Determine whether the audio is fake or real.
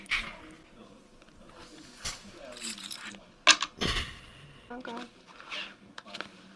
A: real